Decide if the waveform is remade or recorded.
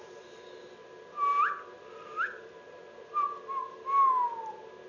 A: recorded